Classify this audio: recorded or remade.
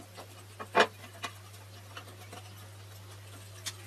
recorded